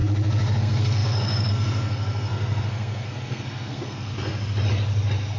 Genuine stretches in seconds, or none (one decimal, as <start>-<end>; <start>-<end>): 0.0-0.6; 4.1-5.4